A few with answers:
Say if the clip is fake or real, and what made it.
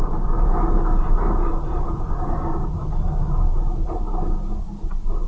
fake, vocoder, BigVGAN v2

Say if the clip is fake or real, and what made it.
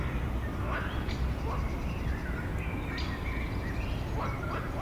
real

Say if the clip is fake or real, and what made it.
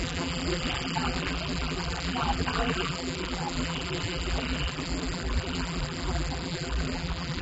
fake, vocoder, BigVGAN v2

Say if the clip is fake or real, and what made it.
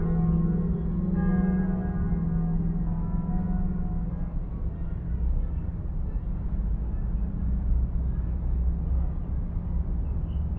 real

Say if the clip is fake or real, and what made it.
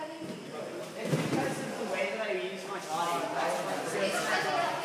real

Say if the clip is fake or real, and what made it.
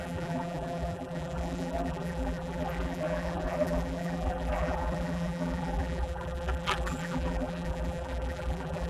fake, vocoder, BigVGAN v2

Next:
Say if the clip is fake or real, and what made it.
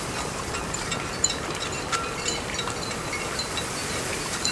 fake, vocoder, BigVGAN v2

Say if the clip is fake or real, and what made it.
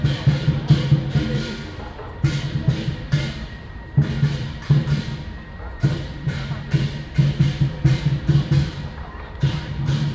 fake, vocoder, BigVGAN v2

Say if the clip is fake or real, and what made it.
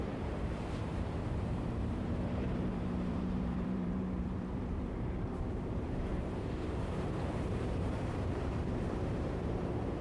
fake, vocoder, BigVGAN v2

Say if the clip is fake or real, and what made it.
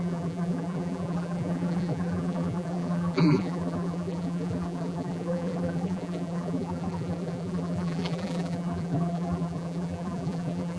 fake, vocoder, BigVGAN v2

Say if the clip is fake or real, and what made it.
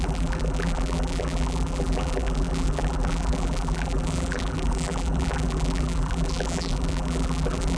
fake, vocoder, BigVGAN v2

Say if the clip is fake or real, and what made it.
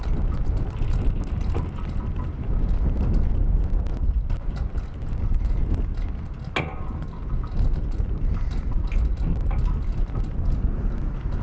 real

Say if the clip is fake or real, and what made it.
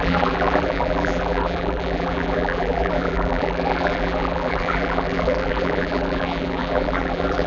fake, vocoder, BigVGAN v2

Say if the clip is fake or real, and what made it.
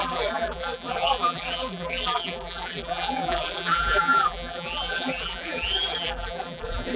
fake, vocoder, BigVGAN v2